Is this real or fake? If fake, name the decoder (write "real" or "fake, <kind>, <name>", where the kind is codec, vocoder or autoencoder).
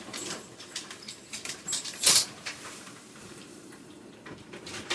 fake, vocoder, BigVGAN v2